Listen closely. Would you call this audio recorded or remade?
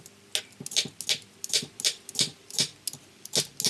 recorded